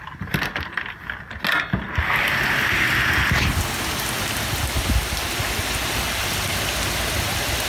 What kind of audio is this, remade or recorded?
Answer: recorded